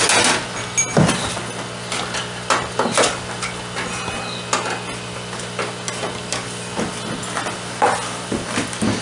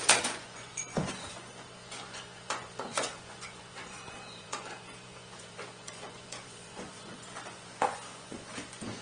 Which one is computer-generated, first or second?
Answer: second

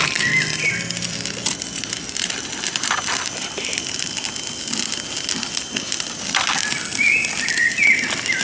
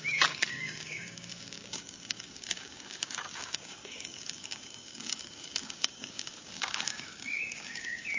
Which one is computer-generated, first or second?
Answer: second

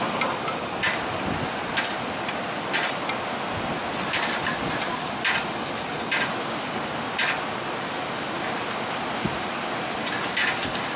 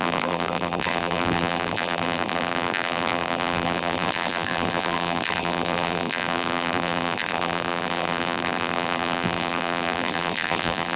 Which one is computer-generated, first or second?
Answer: second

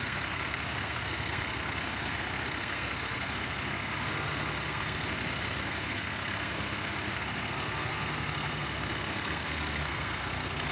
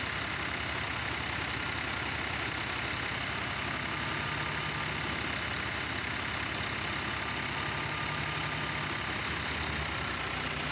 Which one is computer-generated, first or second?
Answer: first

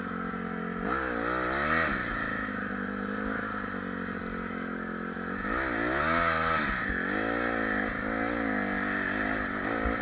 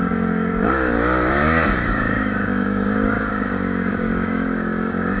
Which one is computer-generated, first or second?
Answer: second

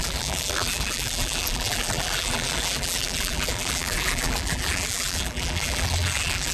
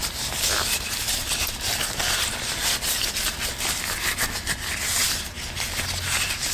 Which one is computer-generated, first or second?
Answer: first